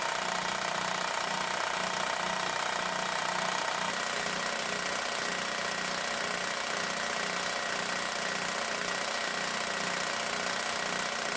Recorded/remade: recorded